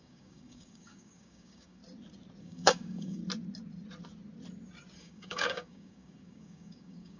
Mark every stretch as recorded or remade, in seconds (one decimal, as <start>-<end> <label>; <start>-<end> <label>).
0.0-1.8 remade; 1.8-2.4 recorded; 2.4-3.2 remade; 3.2-5.0 recorded; 5.0-7.2 remade